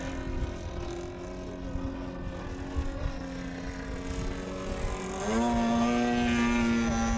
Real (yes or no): yes